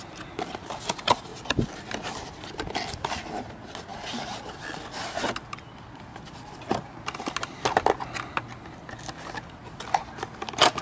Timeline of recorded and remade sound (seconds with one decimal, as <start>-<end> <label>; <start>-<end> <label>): 0.0-10.8 recorded